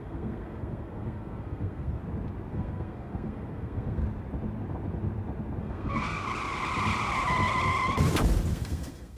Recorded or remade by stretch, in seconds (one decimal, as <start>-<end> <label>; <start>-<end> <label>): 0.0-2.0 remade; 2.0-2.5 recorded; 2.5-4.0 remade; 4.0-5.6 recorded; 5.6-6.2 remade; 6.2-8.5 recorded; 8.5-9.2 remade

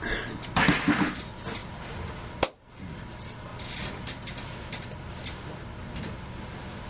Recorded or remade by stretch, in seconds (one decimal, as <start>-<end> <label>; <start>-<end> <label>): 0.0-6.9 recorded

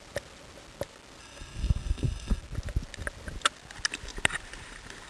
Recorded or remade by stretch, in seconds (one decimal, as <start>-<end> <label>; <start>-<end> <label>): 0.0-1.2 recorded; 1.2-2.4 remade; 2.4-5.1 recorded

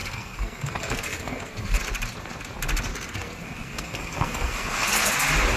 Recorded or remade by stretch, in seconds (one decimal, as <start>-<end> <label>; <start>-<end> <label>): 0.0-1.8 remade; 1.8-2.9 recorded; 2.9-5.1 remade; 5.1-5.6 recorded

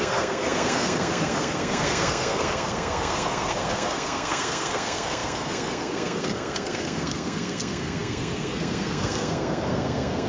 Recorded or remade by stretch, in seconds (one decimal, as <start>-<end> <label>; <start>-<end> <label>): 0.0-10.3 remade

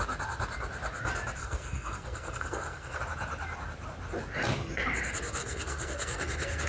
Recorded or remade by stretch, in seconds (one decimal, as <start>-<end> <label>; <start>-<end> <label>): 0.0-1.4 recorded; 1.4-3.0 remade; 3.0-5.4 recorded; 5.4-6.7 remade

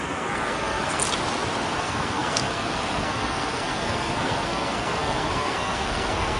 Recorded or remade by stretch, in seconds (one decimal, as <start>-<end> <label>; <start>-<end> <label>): 0.0-1.0 remade; 1.0-1.8 recorded; 1.8-6.4 remade

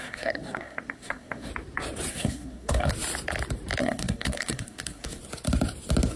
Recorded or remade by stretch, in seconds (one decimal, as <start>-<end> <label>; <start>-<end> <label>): 0.0-1.5 remade; 1.5-2.1 recorded; 2.1-2.9 remade; 2.9-3.8 recorded; 3.8-5.2 remade; 5.2-6.2 recorded